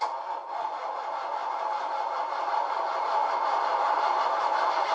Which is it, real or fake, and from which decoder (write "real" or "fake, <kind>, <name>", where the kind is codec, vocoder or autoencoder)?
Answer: real